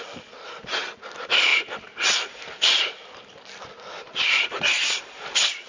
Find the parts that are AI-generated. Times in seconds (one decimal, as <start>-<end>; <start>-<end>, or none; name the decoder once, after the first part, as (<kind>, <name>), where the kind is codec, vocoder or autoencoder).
none